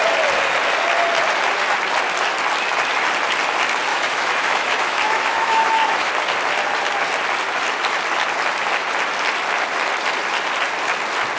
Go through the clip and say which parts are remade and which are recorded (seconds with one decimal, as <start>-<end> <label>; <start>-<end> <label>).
0.0-3.9 recorded; 3.9-6.1 remade; 6.1-11.4 recorded